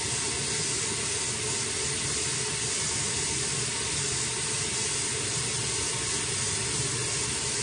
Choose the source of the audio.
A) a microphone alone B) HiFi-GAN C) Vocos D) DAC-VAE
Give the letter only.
A